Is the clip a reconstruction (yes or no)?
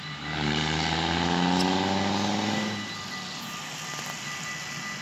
no